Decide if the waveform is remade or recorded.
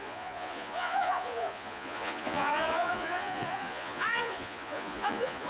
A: remade